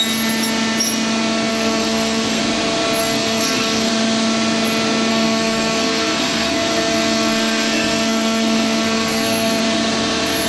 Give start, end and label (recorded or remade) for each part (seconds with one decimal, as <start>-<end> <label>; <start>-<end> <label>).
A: 0.0-1.5 recorded; 1.5-2.4 remade; 2.4-3.0 recorded; 3.0-3.9 remade; 3.9-5.1 recorded; 5.1-9.6 remade; 9.6-10.5 recorded